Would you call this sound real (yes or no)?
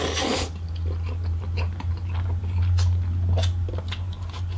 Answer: yes